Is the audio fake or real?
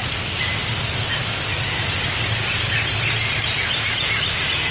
real